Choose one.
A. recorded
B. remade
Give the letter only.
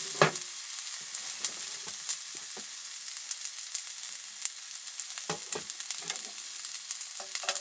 A